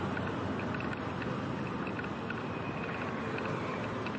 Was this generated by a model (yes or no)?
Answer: no